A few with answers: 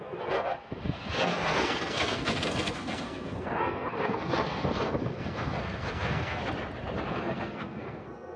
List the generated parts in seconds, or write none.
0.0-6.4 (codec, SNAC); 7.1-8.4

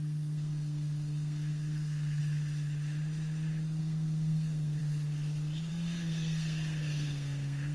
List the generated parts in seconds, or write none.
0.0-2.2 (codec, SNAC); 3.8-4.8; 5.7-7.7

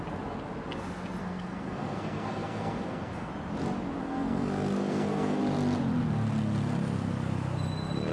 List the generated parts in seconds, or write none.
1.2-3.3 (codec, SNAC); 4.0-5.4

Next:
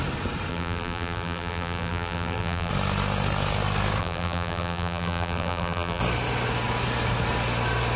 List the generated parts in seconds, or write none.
0.5-2.7 (vocoder, BigVGAN v2); 4.0-6.0